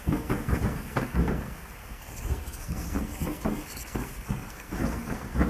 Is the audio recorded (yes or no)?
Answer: no